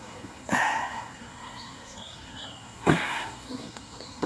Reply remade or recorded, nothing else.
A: remade